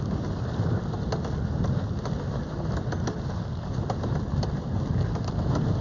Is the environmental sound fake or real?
real